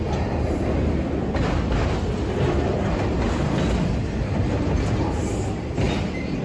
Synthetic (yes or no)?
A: no